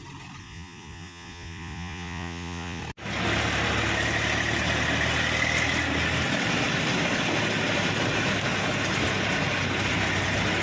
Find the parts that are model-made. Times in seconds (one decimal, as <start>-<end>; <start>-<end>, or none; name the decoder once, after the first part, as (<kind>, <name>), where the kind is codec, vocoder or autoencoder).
0.4-2.8 (vocoder, Vocos)